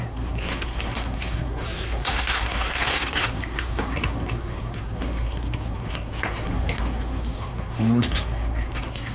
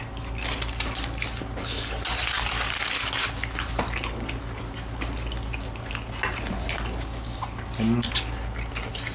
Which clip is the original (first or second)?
second